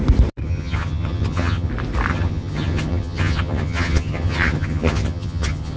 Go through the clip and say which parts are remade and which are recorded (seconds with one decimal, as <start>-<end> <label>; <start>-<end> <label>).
0.0-0.4 recorded; 0.4-1.7 remade; 1.7-2.1 recorded; 2.1-5.8 remade